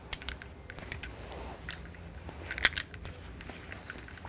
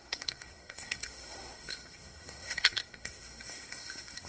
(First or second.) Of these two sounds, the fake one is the second